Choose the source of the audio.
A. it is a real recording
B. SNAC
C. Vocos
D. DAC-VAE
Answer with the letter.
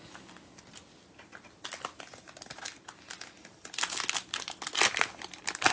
A